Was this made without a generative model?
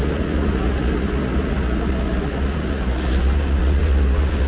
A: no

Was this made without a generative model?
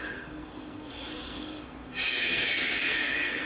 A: no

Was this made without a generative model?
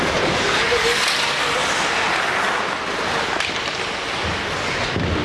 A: yes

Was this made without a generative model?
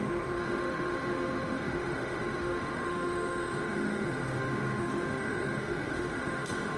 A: no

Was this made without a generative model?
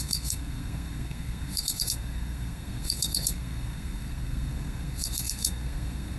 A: no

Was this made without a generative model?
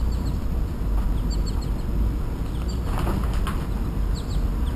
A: yes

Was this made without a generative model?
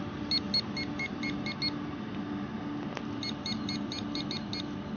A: yes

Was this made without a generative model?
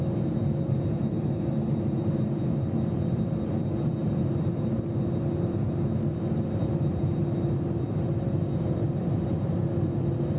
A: yes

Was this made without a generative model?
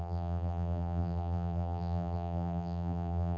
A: no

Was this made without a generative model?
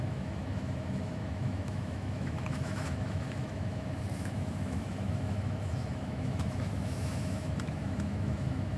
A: no